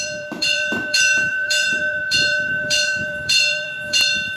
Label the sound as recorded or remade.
remade